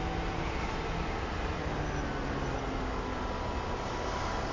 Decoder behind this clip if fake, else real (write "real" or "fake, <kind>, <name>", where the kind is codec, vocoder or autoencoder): real